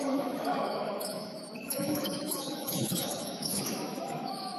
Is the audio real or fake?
fake